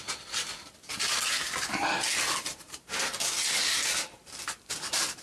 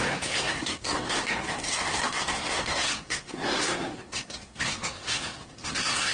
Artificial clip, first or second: second